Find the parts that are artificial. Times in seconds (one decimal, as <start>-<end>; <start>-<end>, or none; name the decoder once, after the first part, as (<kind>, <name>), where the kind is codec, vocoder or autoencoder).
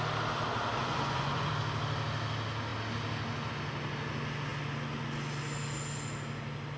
0.8-1.5 (vocoder, Vocos)